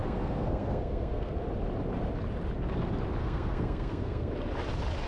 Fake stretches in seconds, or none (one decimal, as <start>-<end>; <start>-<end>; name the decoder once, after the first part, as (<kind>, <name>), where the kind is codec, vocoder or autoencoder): 0.0-1.3 (codec, SNAC); 3.2-4.3